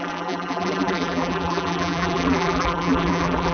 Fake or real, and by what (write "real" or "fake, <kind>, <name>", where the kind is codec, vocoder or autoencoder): fake, vocoder, BigVGAN v2